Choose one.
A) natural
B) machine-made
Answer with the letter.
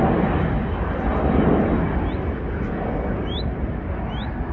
A